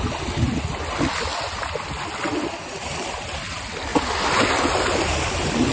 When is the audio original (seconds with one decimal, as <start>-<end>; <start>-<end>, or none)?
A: 0.0-5.7